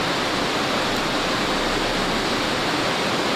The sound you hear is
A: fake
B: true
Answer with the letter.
B